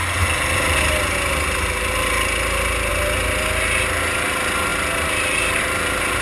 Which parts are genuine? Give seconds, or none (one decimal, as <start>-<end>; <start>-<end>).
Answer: 0.0-6.2